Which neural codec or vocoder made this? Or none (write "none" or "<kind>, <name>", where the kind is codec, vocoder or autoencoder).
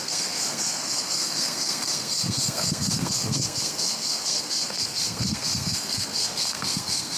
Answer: codec, SNAC